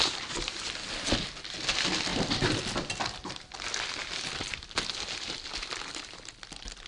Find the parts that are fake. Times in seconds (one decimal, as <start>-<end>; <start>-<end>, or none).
none